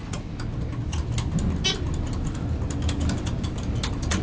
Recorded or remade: recorded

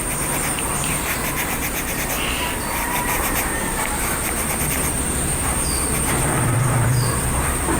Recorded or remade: remade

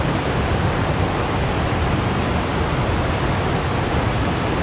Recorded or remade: recorded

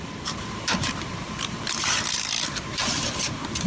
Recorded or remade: remade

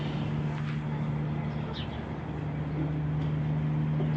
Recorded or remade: recorded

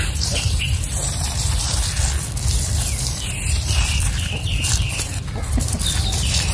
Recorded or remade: remade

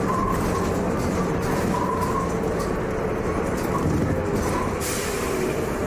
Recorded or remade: recorded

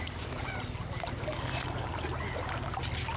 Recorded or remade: recorded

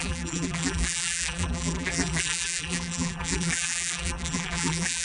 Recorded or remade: remade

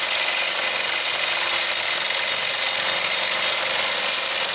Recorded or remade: recorded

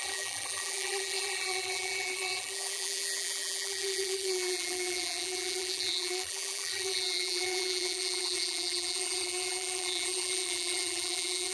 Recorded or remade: remade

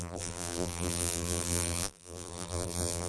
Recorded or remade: remade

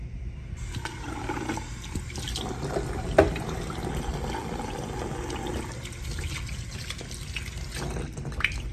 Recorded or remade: recorded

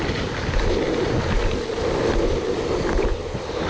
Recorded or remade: recorded